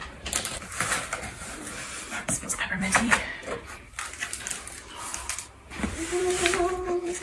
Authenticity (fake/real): fake